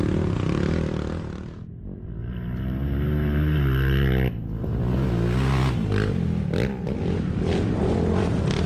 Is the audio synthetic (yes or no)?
no